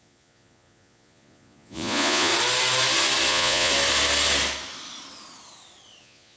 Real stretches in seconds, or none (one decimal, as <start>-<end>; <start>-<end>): 2.3-3.3; 3.7-6.0